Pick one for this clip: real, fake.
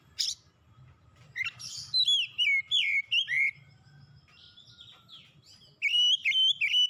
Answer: real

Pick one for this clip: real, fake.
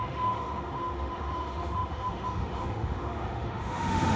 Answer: fake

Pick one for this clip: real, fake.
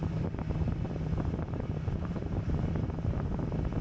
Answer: fake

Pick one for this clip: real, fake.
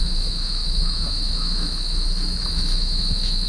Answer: fake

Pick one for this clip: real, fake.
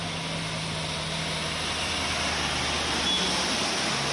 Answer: real